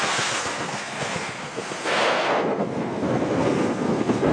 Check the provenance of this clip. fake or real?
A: fake